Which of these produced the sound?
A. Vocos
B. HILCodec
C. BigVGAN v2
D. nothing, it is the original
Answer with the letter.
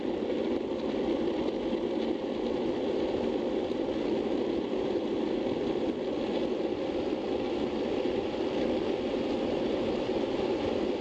D